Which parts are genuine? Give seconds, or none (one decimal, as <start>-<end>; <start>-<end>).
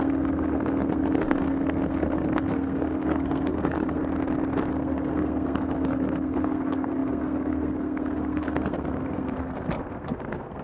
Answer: 4.0-4.7